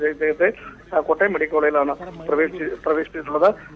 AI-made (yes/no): no